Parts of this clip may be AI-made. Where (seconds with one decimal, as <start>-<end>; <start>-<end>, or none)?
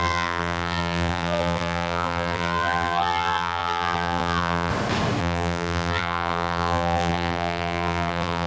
0.0-4.7; 5.2-8.5